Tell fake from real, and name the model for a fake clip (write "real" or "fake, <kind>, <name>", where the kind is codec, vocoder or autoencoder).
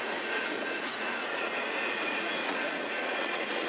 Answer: fake, vocoder, Vocos